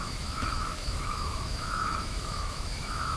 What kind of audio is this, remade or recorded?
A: remade